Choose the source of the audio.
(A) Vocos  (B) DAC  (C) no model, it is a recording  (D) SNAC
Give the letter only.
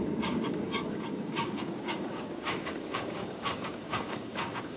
B